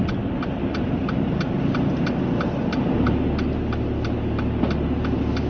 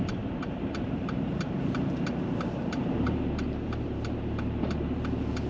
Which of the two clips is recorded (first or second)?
first